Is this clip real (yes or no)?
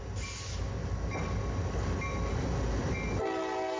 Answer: yes